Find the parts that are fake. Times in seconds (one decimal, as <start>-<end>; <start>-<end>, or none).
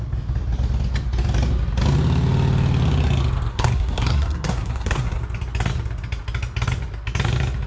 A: 3.5-5.2